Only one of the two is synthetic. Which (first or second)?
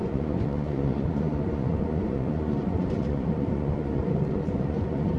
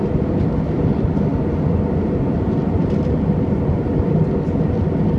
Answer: first